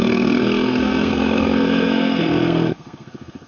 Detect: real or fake fake